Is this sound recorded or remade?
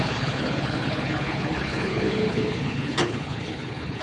remade